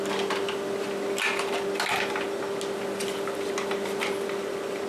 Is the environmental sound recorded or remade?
recorded